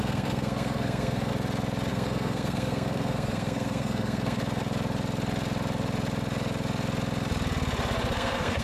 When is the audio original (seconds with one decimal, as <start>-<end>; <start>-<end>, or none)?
1.3-1.9; 4.4-8.1